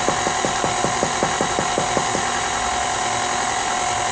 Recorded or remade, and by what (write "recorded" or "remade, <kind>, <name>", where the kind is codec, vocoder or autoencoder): recorded